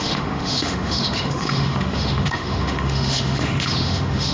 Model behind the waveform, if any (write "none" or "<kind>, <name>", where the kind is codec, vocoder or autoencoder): autoencoder, DAC-VAE